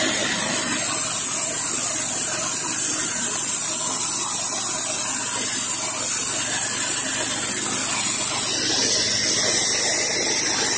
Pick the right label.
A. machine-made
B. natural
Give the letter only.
B